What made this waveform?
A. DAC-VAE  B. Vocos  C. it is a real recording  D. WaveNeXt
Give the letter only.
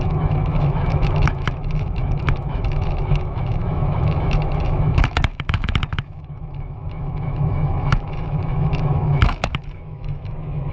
A